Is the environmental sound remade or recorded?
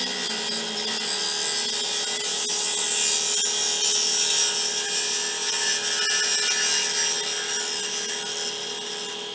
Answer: recorded